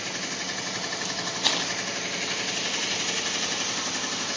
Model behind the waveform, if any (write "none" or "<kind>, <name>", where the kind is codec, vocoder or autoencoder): none